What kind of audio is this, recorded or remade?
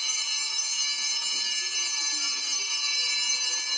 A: recorded